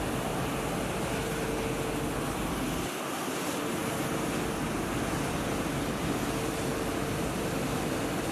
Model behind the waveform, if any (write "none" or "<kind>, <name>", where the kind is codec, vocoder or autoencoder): none